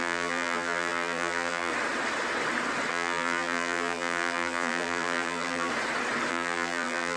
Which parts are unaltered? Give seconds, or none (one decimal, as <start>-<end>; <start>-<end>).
1.7-2.9; 5.7-6.3